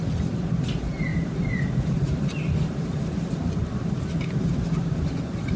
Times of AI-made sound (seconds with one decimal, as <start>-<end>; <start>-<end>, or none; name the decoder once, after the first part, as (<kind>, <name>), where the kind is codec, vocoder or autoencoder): 0.0-0.6 (vocoder, BigVGAN v2); 1.1-3.9